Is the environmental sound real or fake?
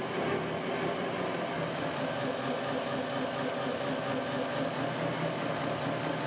real